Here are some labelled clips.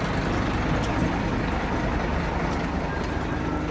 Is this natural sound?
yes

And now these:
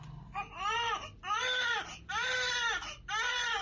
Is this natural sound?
yes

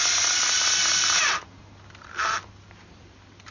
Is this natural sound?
yes